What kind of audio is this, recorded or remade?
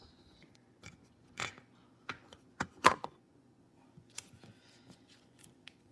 remade